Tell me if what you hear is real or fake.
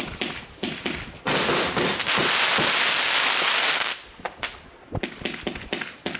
real